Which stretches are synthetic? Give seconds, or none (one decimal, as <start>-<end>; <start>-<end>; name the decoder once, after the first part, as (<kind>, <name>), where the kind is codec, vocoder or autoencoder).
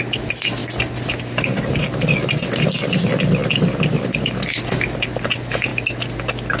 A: 3.4-4.5 (vocoder, BigVGAN v2)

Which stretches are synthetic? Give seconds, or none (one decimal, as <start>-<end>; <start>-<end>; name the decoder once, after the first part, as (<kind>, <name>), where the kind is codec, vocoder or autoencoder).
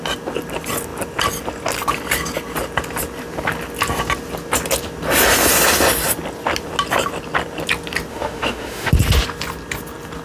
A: 8.1-8.9 (autoencoder, DAC-VAE)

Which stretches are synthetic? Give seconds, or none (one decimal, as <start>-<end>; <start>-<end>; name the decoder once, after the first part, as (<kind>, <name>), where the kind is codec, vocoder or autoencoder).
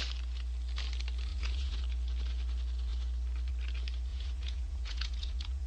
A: 1.3-1.8 (vocoder, Vocos); 4.1-5.7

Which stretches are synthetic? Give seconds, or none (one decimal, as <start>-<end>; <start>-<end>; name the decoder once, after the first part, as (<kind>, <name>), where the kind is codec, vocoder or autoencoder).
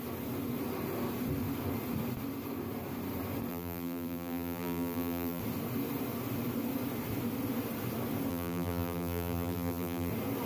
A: 3.5-5.4 (vocoder, BigVGAN v2); 8.3-10.1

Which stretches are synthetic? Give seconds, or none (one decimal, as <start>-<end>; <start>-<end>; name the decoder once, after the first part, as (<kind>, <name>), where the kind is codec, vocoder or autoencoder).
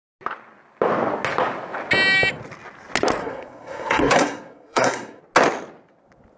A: 3.2-5.2 (codec, SNAC)